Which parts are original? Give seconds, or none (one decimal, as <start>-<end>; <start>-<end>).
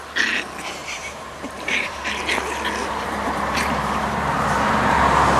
0.0-0.8; 2.1-2.8